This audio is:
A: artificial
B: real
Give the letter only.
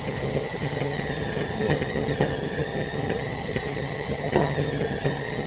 A